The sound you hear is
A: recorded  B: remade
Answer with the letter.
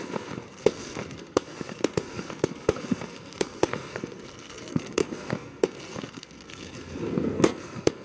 B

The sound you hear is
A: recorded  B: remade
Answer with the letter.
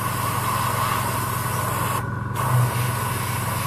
A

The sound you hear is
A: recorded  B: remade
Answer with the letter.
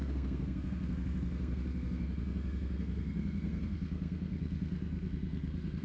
B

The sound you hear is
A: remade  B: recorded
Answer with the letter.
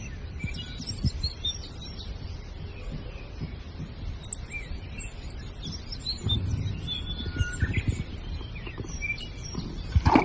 B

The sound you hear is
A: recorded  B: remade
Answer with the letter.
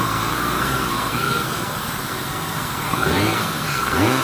B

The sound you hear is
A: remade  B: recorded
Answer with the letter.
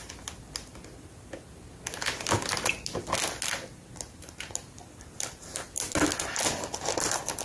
B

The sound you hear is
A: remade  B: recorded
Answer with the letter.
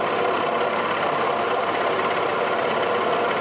B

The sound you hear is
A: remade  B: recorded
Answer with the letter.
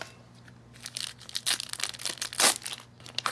B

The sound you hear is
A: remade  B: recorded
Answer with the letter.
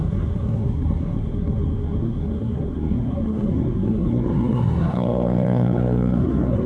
A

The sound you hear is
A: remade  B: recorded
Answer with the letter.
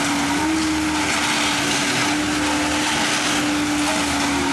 B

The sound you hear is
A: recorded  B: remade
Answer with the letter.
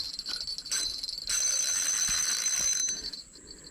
A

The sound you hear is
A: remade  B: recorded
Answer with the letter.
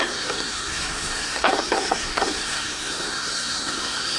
A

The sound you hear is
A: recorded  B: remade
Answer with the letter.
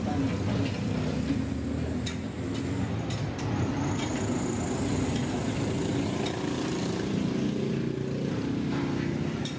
A